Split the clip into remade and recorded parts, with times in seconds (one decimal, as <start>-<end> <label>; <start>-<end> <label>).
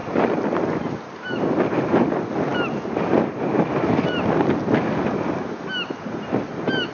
0.0-6.9 recorded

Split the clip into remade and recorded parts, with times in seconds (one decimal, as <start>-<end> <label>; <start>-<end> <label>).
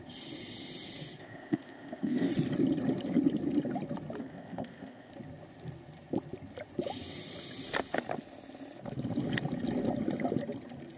0.0-1.2 recorded; 1.2-2.3 remade; 2.3-4.2 recorded; 4.2-5.1 remade; 5.1-11.0 recorded